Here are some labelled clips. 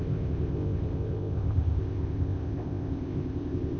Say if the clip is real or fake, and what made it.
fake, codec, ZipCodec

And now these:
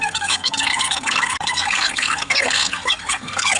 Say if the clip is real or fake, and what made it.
fake, codec, SNAC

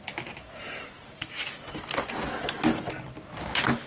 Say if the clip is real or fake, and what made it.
real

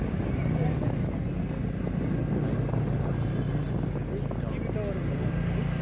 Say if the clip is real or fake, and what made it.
real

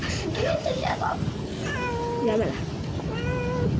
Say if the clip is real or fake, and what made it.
real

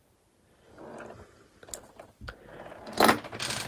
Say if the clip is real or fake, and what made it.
real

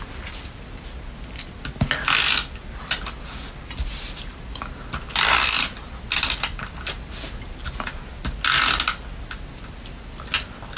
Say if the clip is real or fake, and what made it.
real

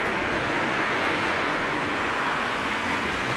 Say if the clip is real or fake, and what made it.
fake, vocoder, Vocos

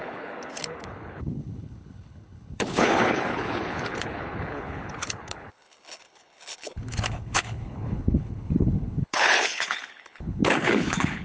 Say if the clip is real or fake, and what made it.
fake, codec, HILCodec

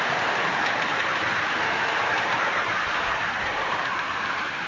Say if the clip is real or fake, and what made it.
fake, vocoder, BigVGAN v2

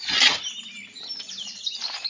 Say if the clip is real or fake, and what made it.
real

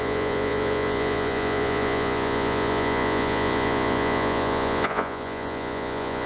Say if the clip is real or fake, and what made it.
fake, vocoder, Vocos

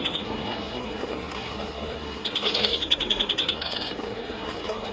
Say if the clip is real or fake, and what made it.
fake, codec, SNAC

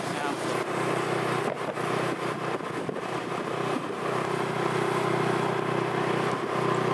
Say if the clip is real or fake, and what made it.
real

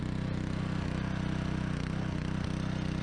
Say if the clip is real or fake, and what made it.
real